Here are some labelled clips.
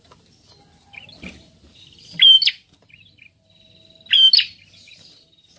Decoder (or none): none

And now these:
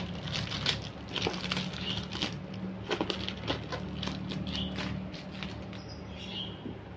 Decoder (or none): none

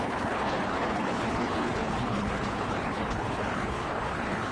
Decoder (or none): codec, HILCodec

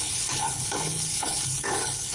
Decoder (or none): codec, HILCodec